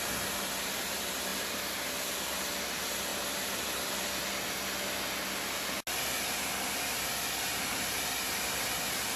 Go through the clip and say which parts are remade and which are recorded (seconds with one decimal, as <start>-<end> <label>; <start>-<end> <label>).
0.0-1.3 recorded; 1.3-2.6 remade; 2.6-3.1 recorded; 3.1-3.6 remade; 3.6-9.2 recorded